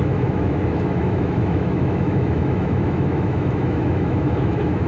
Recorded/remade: remade